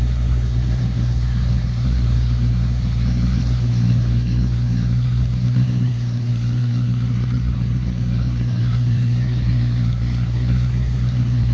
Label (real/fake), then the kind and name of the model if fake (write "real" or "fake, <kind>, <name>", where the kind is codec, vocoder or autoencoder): fake, codec, SNAC